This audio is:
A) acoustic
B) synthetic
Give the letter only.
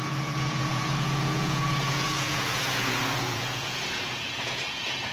B